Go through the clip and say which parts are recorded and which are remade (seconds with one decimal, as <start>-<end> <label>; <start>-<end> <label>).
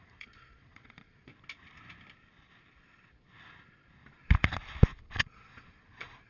0.0-1.3 remade; 1.3-5.0 recorded; 5.0-6.3 remade